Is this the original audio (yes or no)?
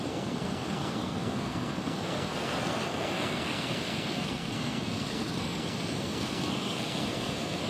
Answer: no